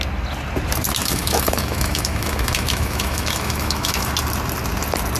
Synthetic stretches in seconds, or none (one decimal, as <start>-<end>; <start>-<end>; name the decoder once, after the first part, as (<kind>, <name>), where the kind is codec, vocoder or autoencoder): 1.0-4.1 (autoencoder, DAC-VAE)